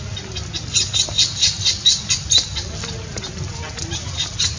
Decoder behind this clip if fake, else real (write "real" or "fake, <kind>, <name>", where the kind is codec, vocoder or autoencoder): real